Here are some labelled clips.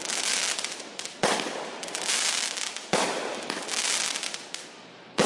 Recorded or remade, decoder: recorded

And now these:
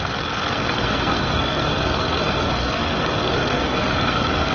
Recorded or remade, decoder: remade, codec, SNAC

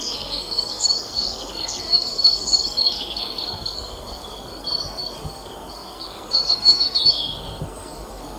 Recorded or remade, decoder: remade, codec, SNAC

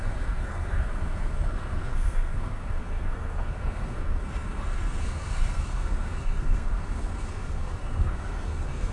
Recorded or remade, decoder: remade, codec, SNAC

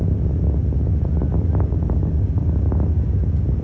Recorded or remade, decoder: recorded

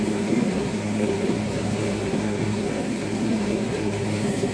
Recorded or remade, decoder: remade, codec, SNAC